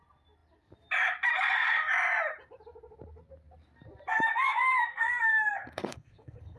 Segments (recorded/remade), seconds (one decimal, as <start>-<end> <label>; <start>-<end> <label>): 0.0-4.3 recorded; 4.3-6.6 remade